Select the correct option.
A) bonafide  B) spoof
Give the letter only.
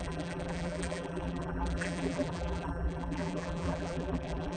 B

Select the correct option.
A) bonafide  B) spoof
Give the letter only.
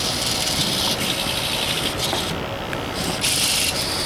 A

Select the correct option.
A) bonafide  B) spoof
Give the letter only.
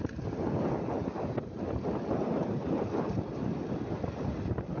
A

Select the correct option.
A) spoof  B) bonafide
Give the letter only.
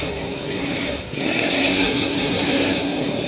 A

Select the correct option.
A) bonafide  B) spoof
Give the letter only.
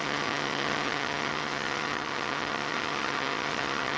B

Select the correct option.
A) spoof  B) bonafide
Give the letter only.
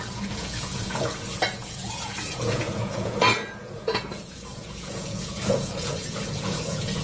A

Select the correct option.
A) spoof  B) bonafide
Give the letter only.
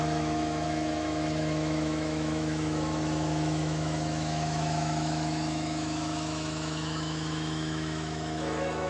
A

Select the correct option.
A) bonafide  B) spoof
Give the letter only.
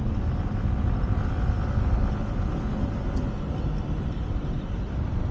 A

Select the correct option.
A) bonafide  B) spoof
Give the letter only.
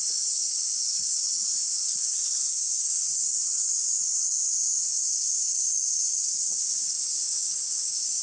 B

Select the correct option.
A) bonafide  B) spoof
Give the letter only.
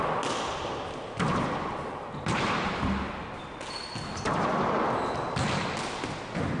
A